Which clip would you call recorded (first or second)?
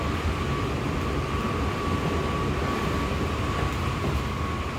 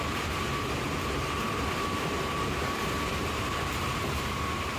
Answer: first